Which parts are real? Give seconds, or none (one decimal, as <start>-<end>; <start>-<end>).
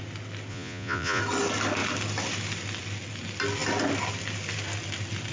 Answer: 0.0-0.5; 1.2-5.3